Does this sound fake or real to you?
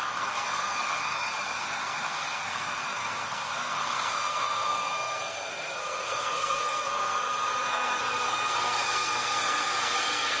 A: fake